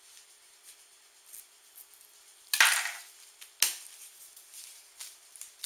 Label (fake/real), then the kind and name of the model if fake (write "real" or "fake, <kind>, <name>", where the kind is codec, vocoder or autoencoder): real